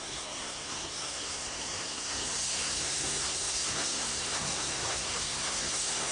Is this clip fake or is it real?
fake